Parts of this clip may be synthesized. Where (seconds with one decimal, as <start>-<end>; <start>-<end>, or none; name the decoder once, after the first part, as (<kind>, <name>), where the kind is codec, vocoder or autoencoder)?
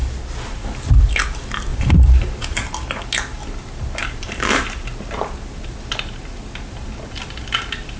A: 1.7-2.7 (vocoder, BigVGAN v2); 4.0-4.9